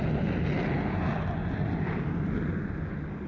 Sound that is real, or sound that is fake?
real